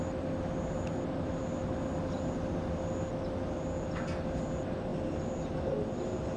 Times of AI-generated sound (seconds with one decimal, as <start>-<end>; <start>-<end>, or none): none